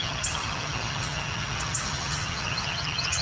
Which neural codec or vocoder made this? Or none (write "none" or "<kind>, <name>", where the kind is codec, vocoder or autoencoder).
vocoder, HiFi-GAN